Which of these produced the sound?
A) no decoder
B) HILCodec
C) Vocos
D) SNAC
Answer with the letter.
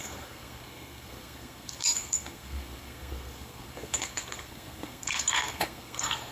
D